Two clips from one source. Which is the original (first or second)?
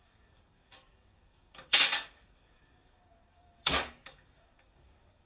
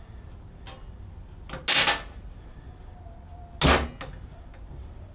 second